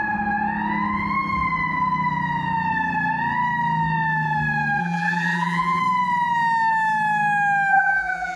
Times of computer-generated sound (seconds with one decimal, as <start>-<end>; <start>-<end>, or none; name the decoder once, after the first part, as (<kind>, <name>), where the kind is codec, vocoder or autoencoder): 4.8-5.8 (vocoder, BigVGAN v2); 7.7-8.4